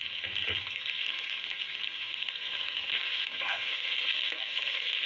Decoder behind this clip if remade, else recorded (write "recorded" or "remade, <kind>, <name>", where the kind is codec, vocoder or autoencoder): remade, codec, SNAC